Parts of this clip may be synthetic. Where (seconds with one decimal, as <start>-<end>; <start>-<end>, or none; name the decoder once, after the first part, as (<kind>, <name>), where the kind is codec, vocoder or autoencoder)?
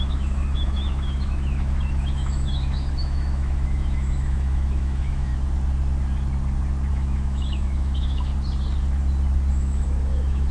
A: 0.0-5.3 (autoencoder, DAC-VAE); 6.9-8.3; 9.5-10.5